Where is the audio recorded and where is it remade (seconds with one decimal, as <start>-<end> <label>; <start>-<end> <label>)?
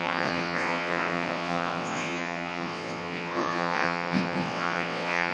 0.0-5.3 remade